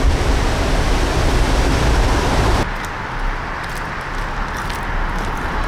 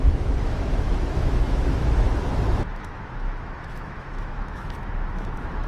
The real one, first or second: first